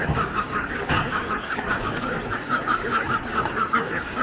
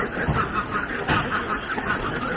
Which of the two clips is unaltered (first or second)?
second